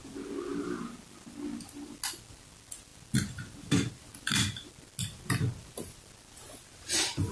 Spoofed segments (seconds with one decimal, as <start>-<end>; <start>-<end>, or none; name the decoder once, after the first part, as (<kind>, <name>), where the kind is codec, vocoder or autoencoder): none